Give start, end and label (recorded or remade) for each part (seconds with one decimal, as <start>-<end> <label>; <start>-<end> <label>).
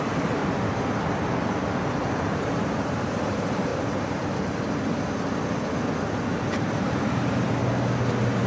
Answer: 0.0-0.4 remade; 0.4-2.3 recorded; 2.3-3.7 remade; 3.7-6.7 recorded; 6.7-7.6 remade; 7.6-8.5 recorded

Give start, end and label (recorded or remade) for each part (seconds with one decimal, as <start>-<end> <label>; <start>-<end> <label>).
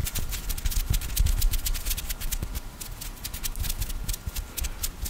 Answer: 0.0-0.6 remade; 0.6-2.5 recorded; 2.5-3.4 remade; 3.4-5.1 recorded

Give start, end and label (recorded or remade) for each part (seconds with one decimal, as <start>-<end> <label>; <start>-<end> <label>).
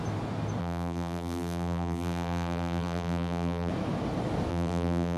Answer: 0.0-0.6 recorded; 0.6-3.7 remade; 3.7-4.5 recorded; 4.5-5.2 remade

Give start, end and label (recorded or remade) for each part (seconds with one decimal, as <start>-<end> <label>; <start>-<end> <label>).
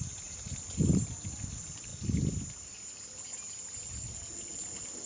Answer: 0.0-1.9 remade; 1.9-3.8 recorded; 3.8-5.1 remade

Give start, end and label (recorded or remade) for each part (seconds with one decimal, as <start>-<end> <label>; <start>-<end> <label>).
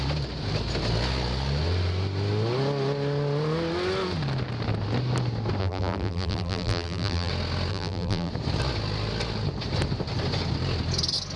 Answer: 0.0-5.6 recorded; 5.6-7.3 remade; 7.3-7.7 recorded; 7.7-8.3 remade; 8.3-11.4 recorded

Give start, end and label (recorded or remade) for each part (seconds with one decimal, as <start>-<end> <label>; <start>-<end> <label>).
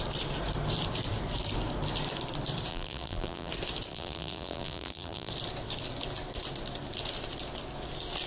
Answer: 0.0-2.7 recorded; 2.7-3.5 remade; 3.5-3.9 recorded; 3.9-5.3 remade; 5.3-8.3 recorded